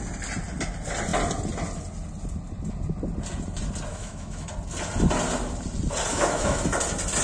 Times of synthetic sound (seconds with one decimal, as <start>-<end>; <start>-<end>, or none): 3.9-4.5; 6.1-6.6